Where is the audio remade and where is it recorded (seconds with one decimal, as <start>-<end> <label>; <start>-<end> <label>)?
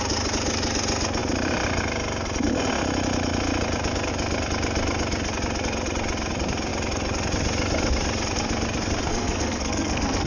0.0-9.1 recorded; 9.1-10.3 remade